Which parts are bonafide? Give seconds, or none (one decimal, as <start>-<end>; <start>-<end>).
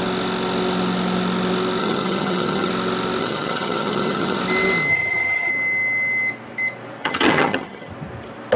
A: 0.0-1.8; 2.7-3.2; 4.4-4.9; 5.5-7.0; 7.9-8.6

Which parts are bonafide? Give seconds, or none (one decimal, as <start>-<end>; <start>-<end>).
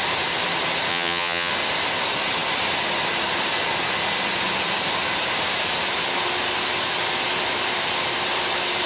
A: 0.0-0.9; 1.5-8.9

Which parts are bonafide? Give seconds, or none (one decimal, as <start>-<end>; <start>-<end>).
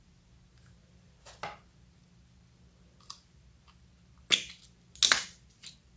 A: 0.0-6.0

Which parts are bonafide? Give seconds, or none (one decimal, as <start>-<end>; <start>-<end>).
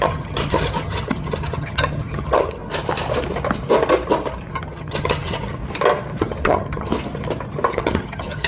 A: 2.6-4.5; 5.6-6.2; 6.9-7.7